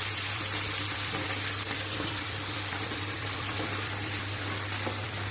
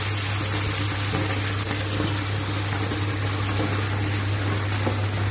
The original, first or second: second